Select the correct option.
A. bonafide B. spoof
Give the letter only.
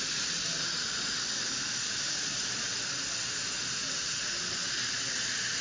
A